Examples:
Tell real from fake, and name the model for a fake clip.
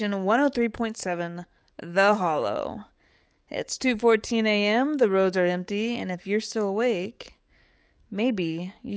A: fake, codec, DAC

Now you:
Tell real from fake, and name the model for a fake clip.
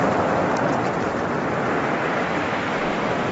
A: real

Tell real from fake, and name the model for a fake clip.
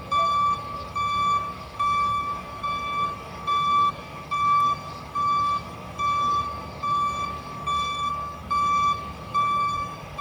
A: fake, codec, DAC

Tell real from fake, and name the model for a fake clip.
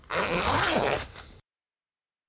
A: real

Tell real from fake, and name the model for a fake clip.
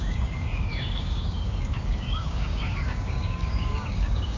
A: fake, codec, DAC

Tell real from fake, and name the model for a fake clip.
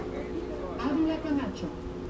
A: real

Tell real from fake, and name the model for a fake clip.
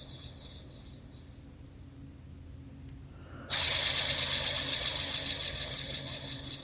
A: real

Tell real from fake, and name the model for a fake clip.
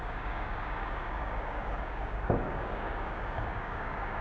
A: fake, codec, DAC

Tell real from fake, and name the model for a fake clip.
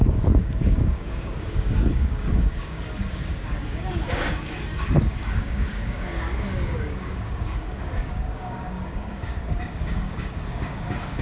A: fake, codec, DAC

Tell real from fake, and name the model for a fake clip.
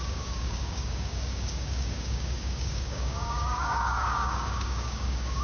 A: fake, codec, DAC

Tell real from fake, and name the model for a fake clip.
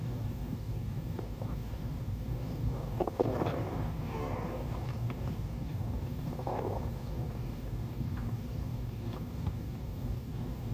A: fake, codec, DAC